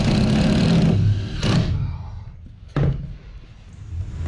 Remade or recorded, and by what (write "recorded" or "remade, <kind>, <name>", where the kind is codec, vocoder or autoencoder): recorded